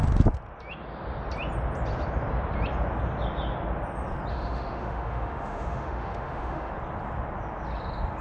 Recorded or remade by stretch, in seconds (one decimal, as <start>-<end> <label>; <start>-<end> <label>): 0.0-4.3 recorded; 4.3-6.7 remade; 6.7-8.2 recorded